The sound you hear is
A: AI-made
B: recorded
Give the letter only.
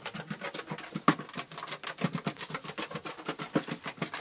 B